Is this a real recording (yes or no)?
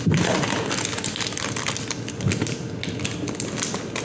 yes